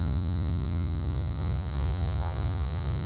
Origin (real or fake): fake